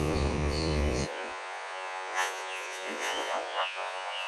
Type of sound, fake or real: fake